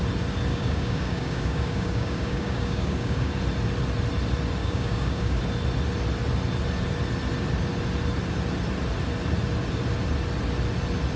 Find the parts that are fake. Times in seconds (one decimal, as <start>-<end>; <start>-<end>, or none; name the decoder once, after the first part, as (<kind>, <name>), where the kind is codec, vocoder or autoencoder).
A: 0.5-3.4 (codec, DAC); 4.6-5.4